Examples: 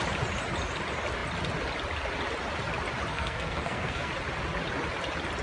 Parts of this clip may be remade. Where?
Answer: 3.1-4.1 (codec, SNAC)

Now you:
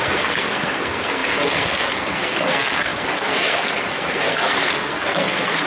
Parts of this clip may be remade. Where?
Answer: 0.0-5.7 (codec, SNAC)

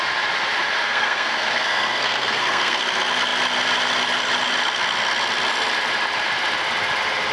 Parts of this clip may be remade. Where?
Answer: 0.8-2.8 (codec, SNAC)

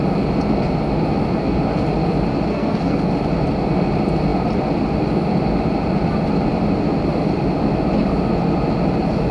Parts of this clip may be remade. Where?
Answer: 2.5-3.1 (codec, SNAC)

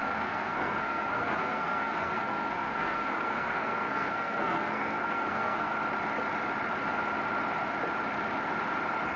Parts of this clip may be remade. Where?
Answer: 0.0-5.7 (codec, SNAC)